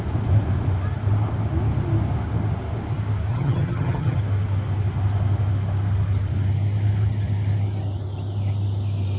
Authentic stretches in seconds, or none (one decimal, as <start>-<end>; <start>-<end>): 0.0-3.3; 4.2-9.2